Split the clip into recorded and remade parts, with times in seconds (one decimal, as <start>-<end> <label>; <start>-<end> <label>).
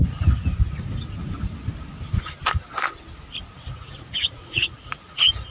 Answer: 0.0-0.5 remade; 0.5-3.6 recorded; 3.6-5.5 remade